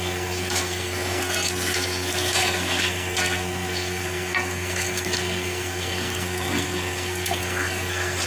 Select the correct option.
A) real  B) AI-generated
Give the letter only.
B